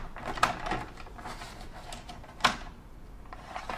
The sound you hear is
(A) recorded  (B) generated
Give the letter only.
A